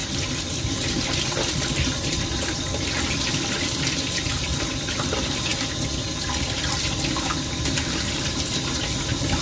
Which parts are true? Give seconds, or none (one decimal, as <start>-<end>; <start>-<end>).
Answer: 4.1-9.4